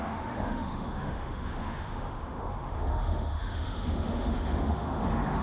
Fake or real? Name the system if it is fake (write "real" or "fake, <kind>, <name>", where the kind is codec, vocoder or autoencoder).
fake, autoencoder, DAC-VAE